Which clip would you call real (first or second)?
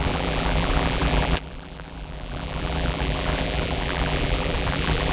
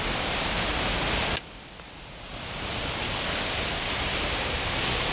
second